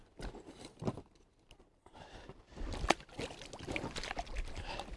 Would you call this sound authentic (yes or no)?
yes